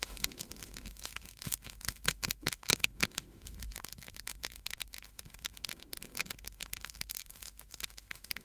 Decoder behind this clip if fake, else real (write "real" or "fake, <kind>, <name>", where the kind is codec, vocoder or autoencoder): fake, autoencoder, DAC-VAE